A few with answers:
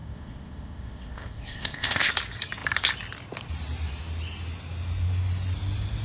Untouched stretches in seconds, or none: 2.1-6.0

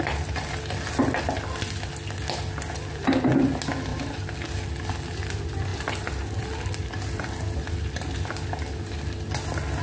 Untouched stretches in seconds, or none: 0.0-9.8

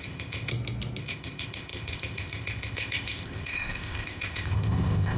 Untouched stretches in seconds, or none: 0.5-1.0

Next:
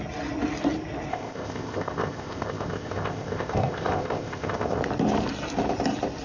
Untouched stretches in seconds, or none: 0.0-1.1; 4.8-6.2

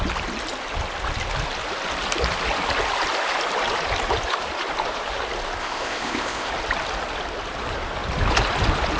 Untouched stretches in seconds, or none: 0.0-5.6; 6.5-9.0